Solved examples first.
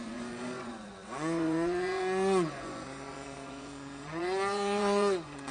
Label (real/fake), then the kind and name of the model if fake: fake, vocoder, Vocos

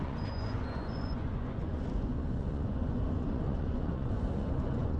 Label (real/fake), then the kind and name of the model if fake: fake, vocoder, Vocos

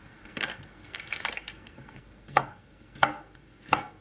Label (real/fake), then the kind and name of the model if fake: fake, codec, SNAC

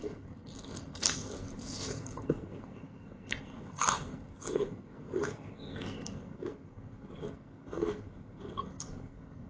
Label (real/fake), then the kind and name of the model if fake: fake, codec, SNAC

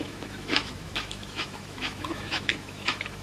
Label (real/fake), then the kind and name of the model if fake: fake, autoencoder, DAC-VAE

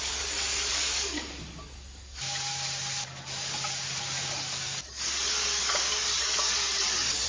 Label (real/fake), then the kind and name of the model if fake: fake, codec, DAC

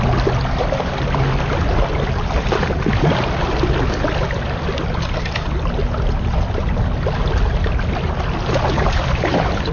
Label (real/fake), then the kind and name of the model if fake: real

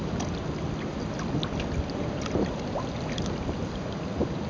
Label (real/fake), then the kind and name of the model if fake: real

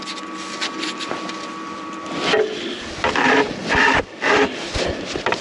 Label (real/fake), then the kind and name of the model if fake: fake, vocoder, BigVGAN v2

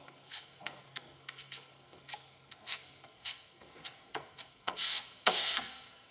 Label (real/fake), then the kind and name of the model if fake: fake, codec, SNAC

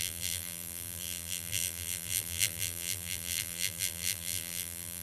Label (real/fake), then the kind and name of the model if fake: fake, vocoder, BigVGAN v2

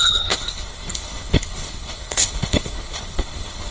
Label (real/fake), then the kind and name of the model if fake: fake, codec, HILCodec